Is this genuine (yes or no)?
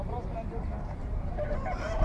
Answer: no